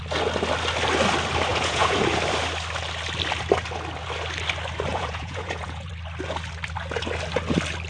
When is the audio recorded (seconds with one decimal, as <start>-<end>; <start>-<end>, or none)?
0.0-1.5; 2.0-4.9; 5.9-7.9